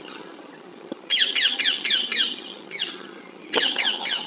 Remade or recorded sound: remade